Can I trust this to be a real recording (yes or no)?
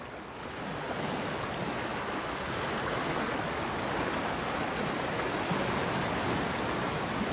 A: yes